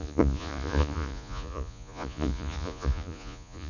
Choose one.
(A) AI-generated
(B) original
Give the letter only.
A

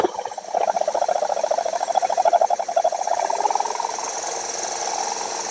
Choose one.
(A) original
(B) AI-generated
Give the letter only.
A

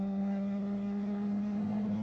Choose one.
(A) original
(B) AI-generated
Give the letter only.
B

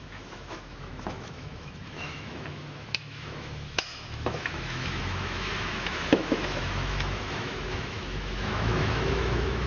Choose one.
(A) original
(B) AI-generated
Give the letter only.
B